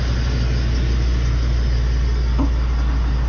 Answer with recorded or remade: recorded